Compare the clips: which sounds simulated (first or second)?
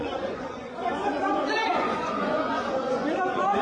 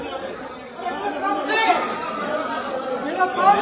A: first